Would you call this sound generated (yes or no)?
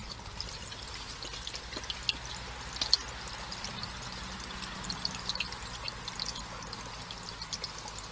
no